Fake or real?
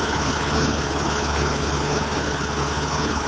fake